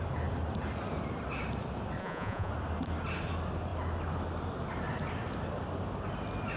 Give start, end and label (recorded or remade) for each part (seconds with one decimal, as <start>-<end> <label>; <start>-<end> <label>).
0.0-2.0 recorded; 2.0-2.5 remade; 2.5-6.6 recorded